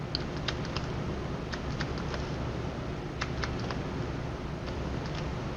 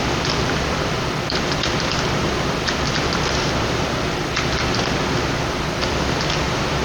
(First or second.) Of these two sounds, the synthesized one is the second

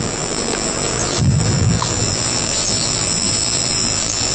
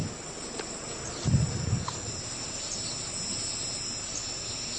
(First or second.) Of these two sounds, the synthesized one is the first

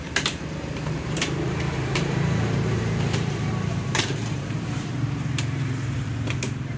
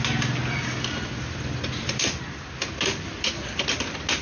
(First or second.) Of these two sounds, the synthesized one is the first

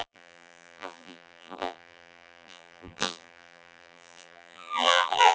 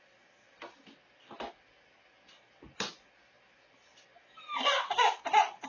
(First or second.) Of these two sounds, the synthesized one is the first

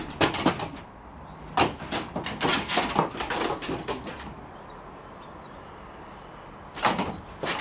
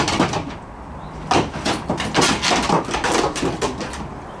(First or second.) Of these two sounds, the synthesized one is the first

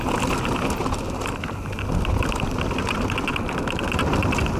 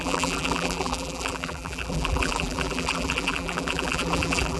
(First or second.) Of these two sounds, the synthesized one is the second